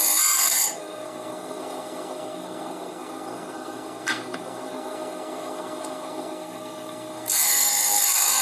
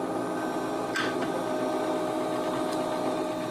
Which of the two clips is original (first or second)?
second